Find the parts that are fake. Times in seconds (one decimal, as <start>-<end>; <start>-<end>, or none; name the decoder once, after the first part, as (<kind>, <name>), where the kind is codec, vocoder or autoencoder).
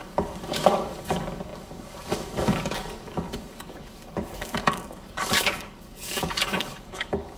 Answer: 0.0-7.4 (codec, DAC)